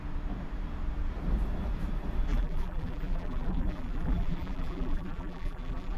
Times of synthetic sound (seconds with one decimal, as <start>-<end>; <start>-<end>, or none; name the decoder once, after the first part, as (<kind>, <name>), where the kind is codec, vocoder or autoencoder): 2.3-6.0 (vocoder, BigVGAN v2)